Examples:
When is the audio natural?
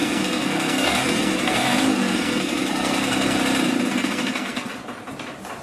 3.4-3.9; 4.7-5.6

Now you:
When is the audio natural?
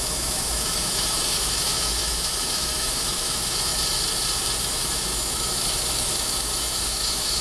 3.7-4.6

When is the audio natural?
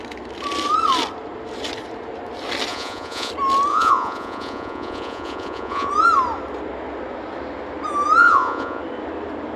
0.0-2.7; 3.3-3.7; 5.9-8.2; 8.8-9.6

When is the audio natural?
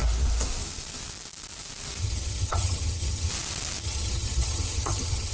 0.0-2.0; 3.3-3.8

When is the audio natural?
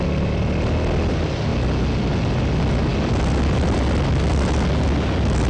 0.0-5.5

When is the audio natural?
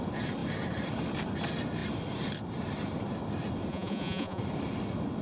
0.0-3.7; 4.4-5.2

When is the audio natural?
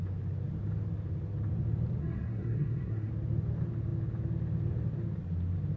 0.0-2.0; 3.1-5.8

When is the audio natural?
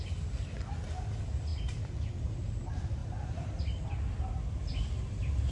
0.0-1.5; 2.0-3.0; 4.6-5.5